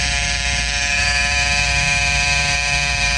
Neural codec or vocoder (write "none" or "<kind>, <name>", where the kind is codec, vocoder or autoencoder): vocoder, BigVGAN v2